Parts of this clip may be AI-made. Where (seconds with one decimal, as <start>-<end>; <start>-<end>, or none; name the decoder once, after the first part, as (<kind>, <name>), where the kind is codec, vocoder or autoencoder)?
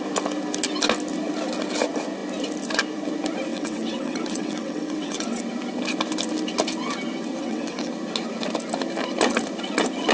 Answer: 3.5-5.4 (vocoder, WaveNeXt); 7.4-7.9